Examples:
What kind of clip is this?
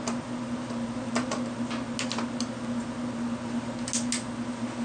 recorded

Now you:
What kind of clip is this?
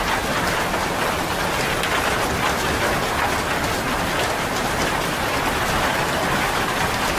recorded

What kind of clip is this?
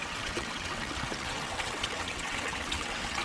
remade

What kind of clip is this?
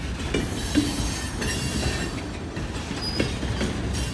recorded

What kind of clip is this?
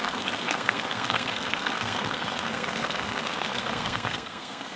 remade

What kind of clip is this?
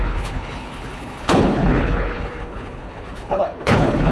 remade